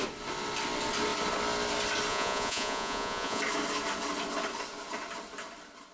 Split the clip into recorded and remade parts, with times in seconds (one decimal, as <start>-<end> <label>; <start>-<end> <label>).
0.0-2.1 recorded; 2.1-3.4 remade; 3.4-5.9 recorded